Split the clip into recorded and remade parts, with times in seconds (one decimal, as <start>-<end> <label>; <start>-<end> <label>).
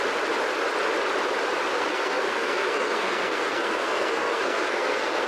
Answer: 0.0-1.7 recorded; 1.7-5.3 remade